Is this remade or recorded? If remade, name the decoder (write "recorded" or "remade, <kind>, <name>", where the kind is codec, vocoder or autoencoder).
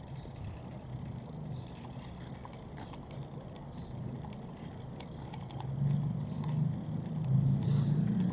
recorded